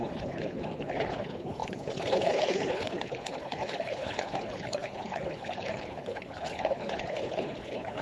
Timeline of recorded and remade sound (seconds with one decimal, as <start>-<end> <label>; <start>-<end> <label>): 0.0-8.0 remade